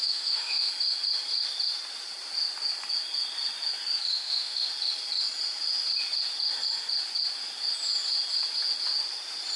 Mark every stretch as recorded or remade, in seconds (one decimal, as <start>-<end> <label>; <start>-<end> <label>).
0.0-0.7 remade; 0.7-4.1 recorded; 4.1-4.7 remade; 4.7-9.6 recorded